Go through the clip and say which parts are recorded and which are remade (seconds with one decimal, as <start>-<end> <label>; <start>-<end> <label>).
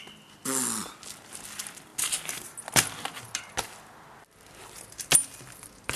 0.0-6.0 recorded